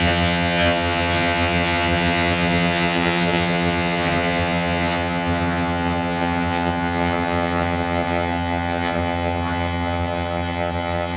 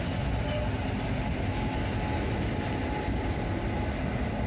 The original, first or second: second